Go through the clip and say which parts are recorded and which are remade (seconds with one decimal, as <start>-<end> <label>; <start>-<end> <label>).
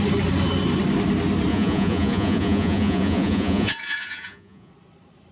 0.0-1.5 recorded; 1.5-4.7 remade; 4.7-5.3 recorded